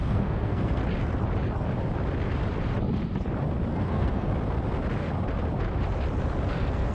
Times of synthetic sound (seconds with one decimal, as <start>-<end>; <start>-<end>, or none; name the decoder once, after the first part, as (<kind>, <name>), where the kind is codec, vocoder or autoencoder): 0.0-0.8 (codec, SNAC); 3.7-4.3; 6.5-6.9